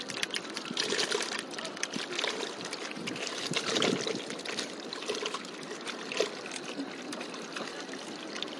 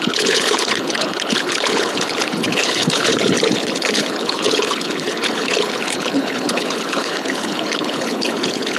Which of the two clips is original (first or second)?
first